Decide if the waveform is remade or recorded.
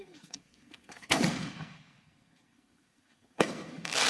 remade